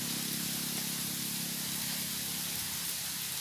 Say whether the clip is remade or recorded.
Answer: recorded